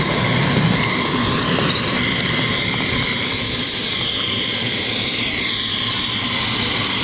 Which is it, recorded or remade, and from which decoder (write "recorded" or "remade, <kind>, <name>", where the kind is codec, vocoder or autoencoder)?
remade, vocoder, BigVGAN v2